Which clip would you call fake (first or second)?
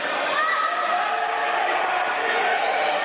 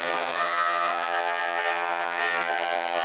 second